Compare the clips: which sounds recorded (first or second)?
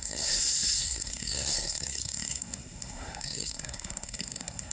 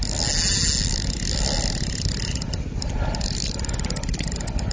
second